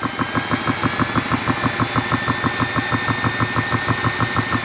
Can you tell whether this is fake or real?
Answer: real